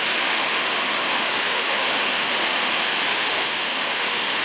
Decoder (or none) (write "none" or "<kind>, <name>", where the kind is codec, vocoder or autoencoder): autoencoder, DAC-VAE